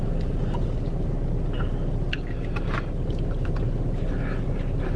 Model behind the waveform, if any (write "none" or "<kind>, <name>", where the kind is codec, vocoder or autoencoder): none